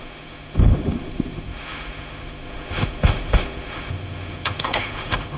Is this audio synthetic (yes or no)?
yes